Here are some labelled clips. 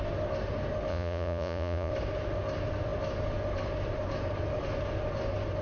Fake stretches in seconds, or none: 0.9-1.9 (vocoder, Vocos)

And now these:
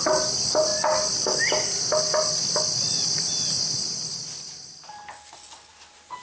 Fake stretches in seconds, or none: none

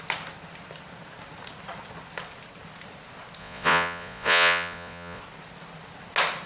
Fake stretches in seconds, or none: 3.4-5.2 (vocoder, Vocos)

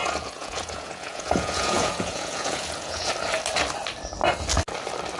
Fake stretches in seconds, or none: 0.0-3.1 (vocoder, Vocos)

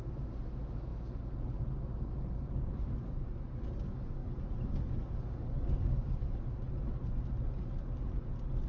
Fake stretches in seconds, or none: none